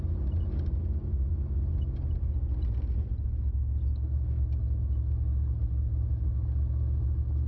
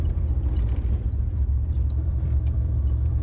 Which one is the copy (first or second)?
second